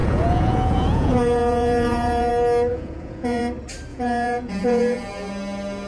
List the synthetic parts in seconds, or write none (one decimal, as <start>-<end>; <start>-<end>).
0.0-2.3; 2.7-3.4; 3.9-5.3